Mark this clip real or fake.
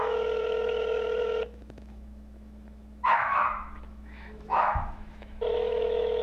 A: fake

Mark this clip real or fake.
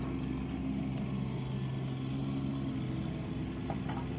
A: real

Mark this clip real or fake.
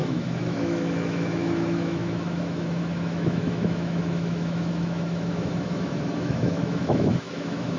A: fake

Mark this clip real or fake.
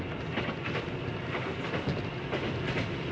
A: real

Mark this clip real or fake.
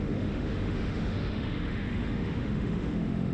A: fake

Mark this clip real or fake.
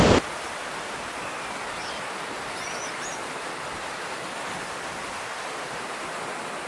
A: real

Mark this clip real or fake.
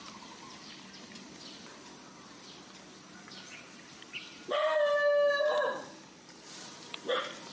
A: real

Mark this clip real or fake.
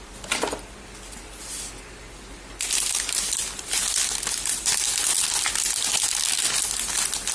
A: real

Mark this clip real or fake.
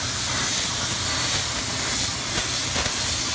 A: real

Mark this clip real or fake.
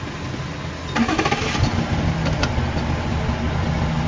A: real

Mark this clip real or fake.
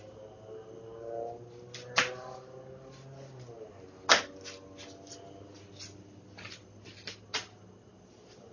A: real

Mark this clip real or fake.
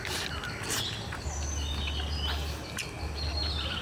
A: real